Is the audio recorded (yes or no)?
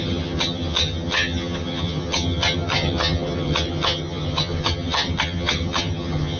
no